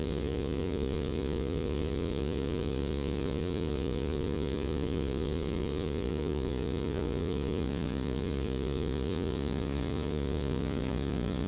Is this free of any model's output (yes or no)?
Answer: no